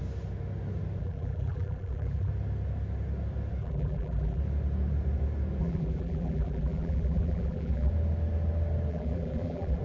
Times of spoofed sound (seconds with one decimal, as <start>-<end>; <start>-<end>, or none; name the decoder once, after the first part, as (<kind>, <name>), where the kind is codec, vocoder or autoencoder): 1.0-2.3 (vocoder, BigVGAN v2); 3.6-4.4; 5.6-7.9; 8.9-9.8